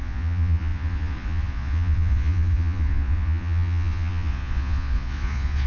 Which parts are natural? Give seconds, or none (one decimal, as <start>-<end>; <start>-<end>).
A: none